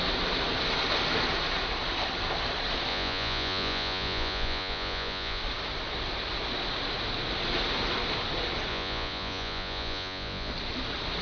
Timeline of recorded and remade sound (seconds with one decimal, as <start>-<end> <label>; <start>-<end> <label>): 0.0-2.9 recorded; 2.9-5.4 remade; 5.4-8.7 recorded; 8.7-10.5 remade; 10.5-11.2 recorded